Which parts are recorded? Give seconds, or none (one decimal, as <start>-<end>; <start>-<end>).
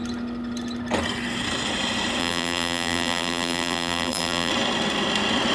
0.0-2.2; 4.5-5.5